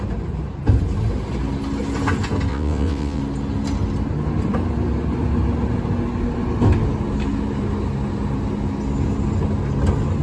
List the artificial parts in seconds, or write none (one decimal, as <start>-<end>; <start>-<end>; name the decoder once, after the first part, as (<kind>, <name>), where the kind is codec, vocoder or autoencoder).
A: 2.5-3.2 (vocoder, WaveNeXt)